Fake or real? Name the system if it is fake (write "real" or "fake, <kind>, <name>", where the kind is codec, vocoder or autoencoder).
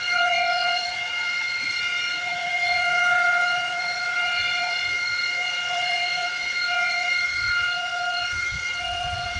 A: fake, vocoder, WaveNeXt